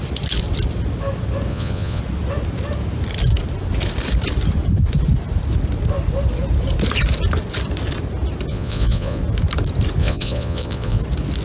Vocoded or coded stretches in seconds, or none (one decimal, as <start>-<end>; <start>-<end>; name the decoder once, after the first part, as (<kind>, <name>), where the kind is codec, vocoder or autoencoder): 1.5-2.0 (vocoder, Vocos); 8.5-9.2; 10.0-11.0